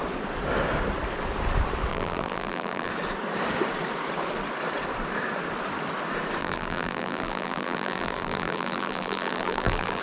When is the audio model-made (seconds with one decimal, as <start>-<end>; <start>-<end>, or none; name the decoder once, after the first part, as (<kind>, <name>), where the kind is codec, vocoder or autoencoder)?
1.9-2.9 (vocoder, BigVGAN v2); 6.4-10.0